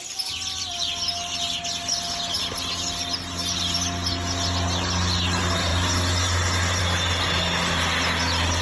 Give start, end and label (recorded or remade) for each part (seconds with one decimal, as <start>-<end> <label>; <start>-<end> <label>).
0.0-8.6 recorded